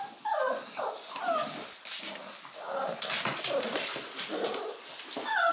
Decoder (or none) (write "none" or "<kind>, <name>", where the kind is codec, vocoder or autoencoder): none